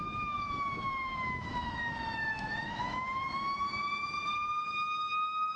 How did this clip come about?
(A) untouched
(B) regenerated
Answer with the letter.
B